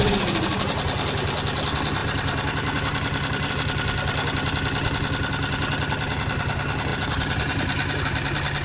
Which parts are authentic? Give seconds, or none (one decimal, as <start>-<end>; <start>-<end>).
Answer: 0.0-2.0; 3.5-6.9; 8.0-8.6